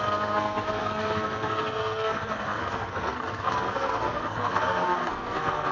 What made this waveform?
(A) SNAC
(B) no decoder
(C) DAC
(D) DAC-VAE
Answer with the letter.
A